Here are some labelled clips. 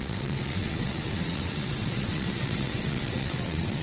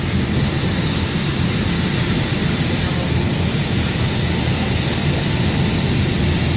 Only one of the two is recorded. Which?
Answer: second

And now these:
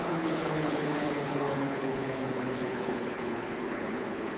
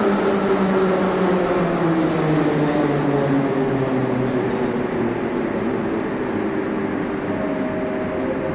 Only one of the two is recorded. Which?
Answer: second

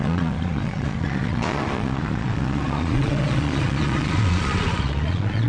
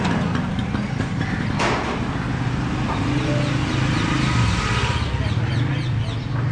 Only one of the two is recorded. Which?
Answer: second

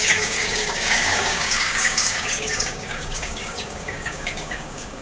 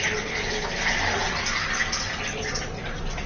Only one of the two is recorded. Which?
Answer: second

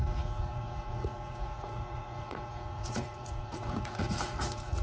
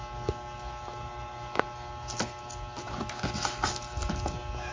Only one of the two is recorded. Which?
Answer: second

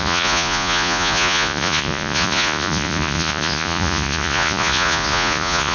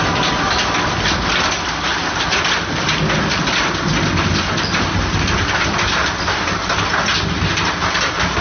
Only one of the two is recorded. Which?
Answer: second